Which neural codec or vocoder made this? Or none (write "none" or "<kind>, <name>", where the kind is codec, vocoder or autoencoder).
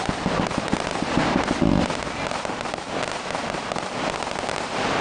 none